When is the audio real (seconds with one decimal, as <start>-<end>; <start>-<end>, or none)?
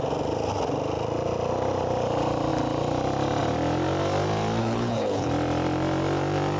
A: 0.0-4.6; 5.3-6.6